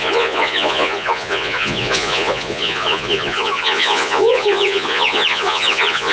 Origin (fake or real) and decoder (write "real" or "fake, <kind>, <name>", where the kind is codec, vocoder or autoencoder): fake, vocoder, Vocos